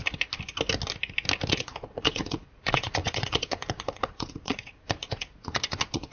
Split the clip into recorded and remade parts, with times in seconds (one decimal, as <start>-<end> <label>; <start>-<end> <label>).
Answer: 0.0-1.5 recorded; 1.5-6.1 remade